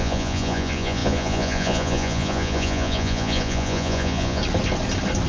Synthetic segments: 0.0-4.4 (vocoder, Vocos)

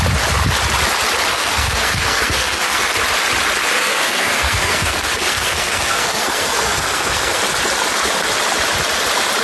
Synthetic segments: 1.3-2.9 (codec, SNAC); 3.8-7.4